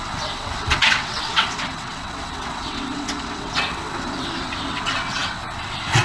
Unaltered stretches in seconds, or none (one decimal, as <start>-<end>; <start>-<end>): none